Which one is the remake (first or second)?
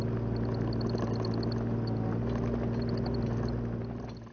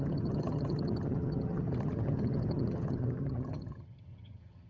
second